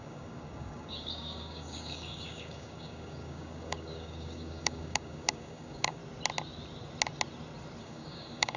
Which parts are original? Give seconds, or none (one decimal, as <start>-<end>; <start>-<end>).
6.0-7.8